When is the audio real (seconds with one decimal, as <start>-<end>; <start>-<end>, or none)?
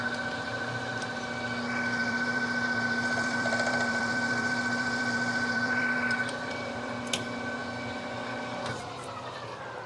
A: 0.0-2.0; 7.0-9.9